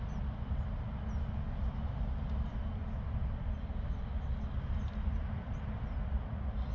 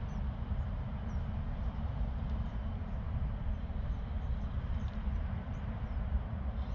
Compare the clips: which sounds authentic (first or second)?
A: first